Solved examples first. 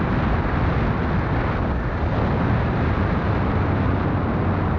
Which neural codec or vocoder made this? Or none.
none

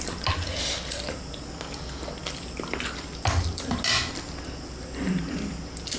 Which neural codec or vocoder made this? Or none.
none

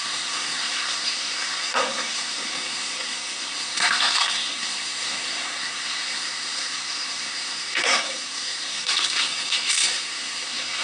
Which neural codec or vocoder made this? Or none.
codec, SNAC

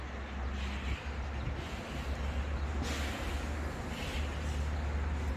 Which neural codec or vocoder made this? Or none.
none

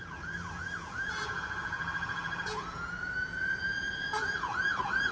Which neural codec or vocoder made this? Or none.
vocoder, Vocos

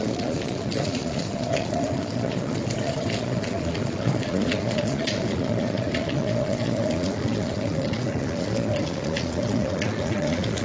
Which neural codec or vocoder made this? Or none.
vocoder, Vocos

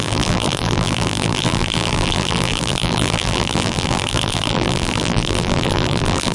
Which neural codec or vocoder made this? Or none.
vocoder, BigVGAN v2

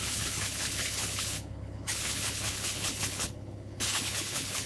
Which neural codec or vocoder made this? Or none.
codec, HILCodec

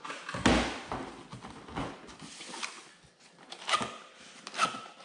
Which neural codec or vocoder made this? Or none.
none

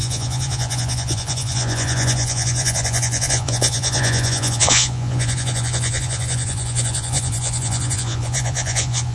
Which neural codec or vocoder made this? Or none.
vocoder, Vocos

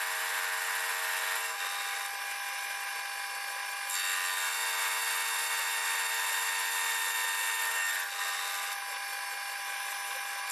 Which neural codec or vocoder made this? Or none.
none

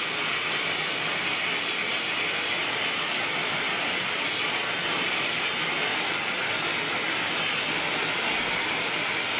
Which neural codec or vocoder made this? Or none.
vocoder, BigVGAN v2